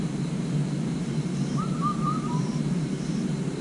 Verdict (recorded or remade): remade